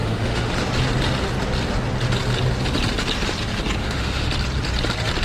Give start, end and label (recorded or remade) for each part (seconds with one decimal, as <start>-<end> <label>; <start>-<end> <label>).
0.0-0.5 remade; 0.5-3.8 recorded; 3.8-4.3 remade; 4.3-5.2 recorded